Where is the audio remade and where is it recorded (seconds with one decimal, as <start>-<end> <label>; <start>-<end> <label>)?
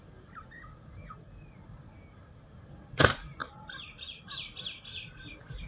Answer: 0.0-5.7 recorded